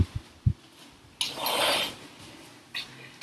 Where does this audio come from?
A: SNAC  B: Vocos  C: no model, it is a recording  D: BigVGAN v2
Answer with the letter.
C